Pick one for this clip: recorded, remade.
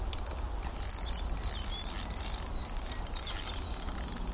recorded